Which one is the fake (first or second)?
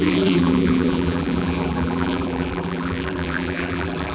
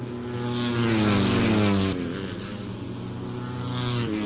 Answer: first